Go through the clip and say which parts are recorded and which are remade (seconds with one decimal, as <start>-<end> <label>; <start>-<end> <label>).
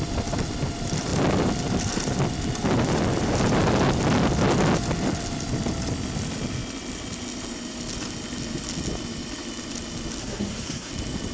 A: 0.0-10.2 recorded; 10.2-10.9 remade; 10.9-11.3 recorded